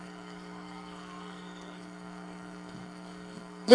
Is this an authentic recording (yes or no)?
no